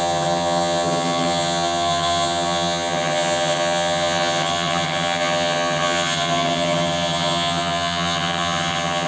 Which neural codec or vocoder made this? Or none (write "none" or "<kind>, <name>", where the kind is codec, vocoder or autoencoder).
vocoder, HiFi-GAN